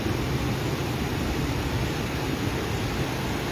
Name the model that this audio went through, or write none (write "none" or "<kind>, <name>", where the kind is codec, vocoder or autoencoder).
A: none